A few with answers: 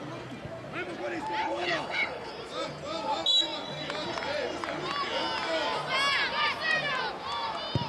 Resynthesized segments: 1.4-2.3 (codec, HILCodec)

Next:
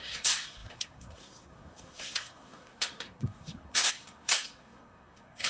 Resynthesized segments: 0.0-5.5 (codec, SNAC)

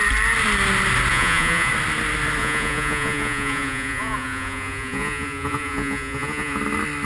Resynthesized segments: 1.1-1.7 (vocoder, Vocos); 2.4-6.6

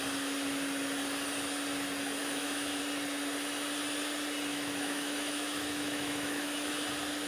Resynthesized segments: 2.2-2.8 (autoencoder, DAC-VAE); 4.5-6.7

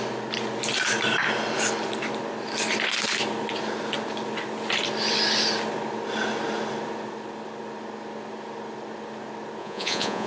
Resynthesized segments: 9.6-10.3 (vocoder, Vocos)

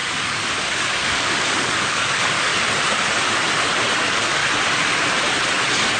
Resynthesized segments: 0.0-2.5 (codec, DAC); 4.0-4.4

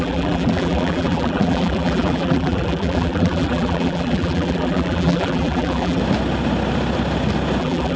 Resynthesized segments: 0.0-6.0 (vocoder, BigVGAN v2); 7.6-8.0